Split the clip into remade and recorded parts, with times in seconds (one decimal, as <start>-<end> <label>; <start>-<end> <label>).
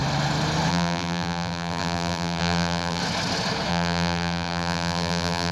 0.0-0.7 recorded; 0.7-3.0 remade; 3.0-3.7 recorded; 3.7-5.5 remade